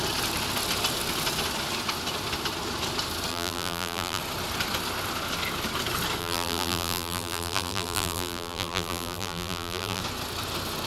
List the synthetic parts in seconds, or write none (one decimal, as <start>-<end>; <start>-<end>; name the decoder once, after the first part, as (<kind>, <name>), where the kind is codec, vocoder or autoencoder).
3.3-4.2 (vocoder, BigVGAN v2); 6.2-10.0